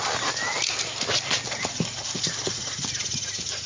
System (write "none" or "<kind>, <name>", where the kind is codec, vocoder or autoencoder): none